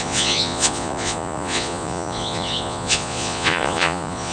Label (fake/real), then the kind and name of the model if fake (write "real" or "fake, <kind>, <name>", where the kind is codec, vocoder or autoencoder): fake, vocoder, Vocos